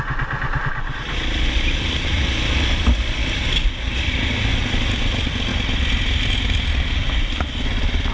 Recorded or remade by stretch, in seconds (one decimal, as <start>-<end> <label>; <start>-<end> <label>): 0.0-8.1 recorded